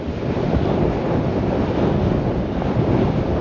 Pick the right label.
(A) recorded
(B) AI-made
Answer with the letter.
A